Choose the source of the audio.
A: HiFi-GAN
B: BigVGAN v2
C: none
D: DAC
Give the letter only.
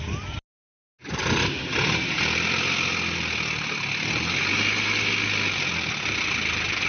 C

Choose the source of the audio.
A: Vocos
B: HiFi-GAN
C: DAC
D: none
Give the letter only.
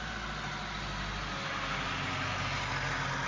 D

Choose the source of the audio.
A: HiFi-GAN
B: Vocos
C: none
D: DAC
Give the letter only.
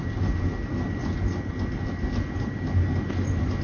C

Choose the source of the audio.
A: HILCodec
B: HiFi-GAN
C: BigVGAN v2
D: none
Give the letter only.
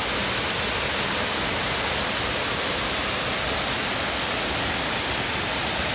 D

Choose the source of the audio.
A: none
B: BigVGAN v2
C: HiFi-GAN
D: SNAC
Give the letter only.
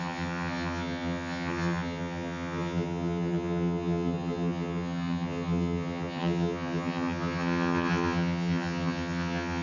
C